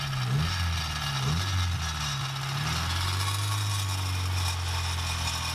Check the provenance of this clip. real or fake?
real